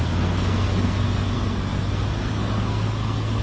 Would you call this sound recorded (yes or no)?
no